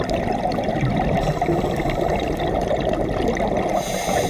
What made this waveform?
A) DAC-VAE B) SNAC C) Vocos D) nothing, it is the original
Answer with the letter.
D